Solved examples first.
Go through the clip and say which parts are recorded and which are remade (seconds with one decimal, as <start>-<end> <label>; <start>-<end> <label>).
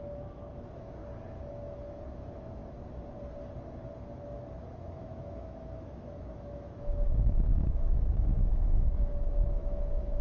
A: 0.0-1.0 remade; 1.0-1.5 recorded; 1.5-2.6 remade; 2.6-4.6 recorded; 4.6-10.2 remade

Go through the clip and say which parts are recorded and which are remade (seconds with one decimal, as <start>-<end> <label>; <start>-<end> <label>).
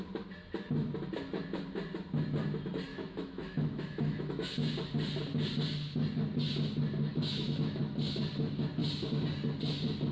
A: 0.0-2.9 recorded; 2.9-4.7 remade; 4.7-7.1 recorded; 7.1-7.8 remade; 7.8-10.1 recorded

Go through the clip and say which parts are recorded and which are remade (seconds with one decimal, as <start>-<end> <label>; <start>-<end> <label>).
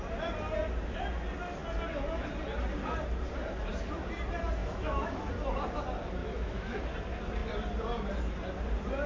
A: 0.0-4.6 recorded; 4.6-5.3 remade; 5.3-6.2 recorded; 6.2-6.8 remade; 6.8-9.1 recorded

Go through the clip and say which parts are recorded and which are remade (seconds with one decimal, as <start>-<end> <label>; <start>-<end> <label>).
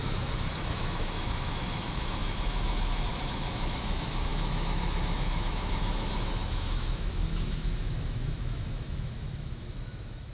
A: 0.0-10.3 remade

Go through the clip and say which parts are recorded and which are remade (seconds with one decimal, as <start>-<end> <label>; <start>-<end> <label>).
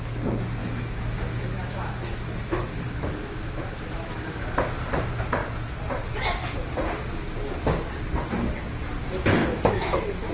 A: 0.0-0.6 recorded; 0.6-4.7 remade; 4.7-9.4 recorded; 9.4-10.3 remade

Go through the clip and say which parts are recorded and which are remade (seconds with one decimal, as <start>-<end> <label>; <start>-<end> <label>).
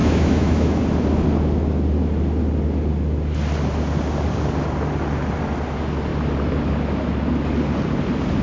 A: 0.0-0.8 remade; 0.8-8.4 recorded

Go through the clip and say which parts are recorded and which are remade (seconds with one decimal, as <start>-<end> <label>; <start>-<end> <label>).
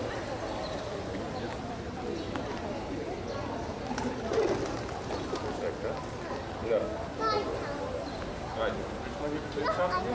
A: 0.0-10.1 recorded